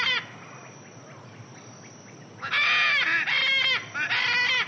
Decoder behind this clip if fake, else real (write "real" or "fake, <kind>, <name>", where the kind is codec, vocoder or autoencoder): real